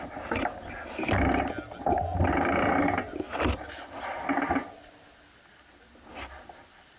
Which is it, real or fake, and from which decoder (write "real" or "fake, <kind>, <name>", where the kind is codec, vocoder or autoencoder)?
real